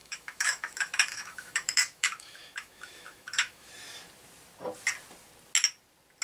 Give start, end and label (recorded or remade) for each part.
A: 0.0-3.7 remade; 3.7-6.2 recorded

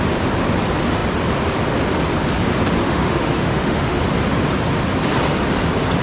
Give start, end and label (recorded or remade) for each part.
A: 0.0-2.8 recorded; 2.8-4.0 remade; 4.0-6.0 recorded

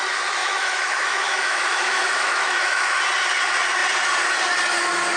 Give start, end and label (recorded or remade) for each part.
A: 0.0-0.4 recorded; 0.4-3.0 remade; 3.0-5.2 recorded

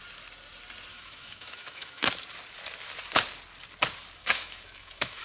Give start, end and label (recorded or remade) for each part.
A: 0.0-0.9 recorded; 0.9-2.1 remade; 2.1-4.2 recorded; 4.2-5.2 remade

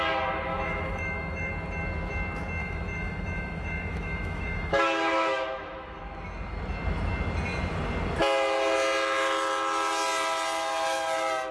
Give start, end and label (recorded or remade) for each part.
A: 0.0-0.5 recorded; 0.5-1.5 remade; 1.5-2.6 recorded; 2.6-6.0 remade; 6.0-11.5 recorded

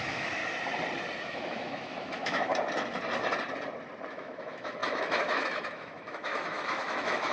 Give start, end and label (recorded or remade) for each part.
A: 0.0-0.4 remade; 0.4-1.2 recorded; 1.2-2.5 remade; 2.5-4.1 recorded; 4.1-7.3 remade

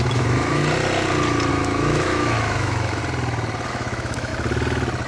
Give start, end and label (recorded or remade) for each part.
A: 0.0-0.6 remade; 0.6-1.5 recorded; 1.5-3.0 remade; 3.0-3.7 recorded; 3.7-4.3 remade; 4.3-5.1 recorded

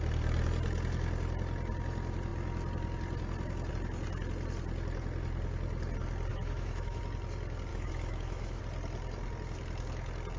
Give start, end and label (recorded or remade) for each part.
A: 0.0-6.3 recorded; 6.3-7.0 remade; 7.0-7.7 recorded; 7.7-8.6 remade; 8.6-10.4 recorded